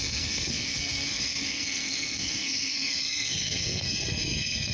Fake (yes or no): yes